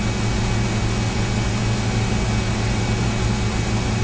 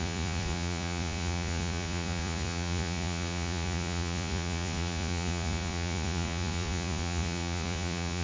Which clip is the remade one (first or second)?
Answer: second